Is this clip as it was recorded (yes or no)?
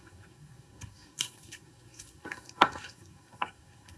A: no